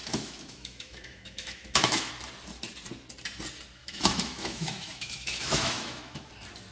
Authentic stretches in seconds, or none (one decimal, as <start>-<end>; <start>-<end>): 2.1-3.8; 6.3-6.7